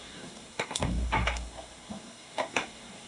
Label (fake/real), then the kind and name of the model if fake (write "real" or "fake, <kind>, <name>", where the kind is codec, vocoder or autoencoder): fake, codec, SNAC